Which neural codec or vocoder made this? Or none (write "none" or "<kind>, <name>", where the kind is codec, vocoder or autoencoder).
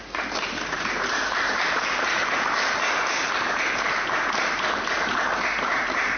vocoder, BigVGAN v2